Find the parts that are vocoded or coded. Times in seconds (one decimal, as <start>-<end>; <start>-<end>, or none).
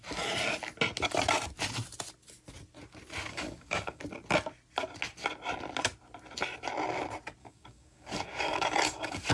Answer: 3.3-4.0; 7.4-9.3